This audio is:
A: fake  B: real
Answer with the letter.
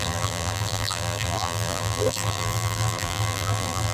A